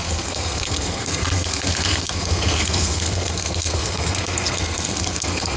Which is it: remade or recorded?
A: remade